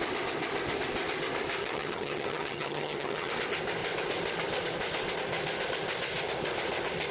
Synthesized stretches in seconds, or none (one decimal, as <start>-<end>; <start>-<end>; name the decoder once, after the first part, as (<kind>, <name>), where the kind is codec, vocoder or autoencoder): 1.6-3.3 (vocoder, HiFi-GAN)